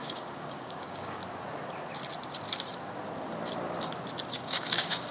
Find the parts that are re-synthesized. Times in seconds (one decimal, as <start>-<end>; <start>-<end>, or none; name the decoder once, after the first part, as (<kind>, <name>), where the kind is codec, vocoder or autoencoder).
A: 0.0-1.2 (codec, DAC); 4.3-5.1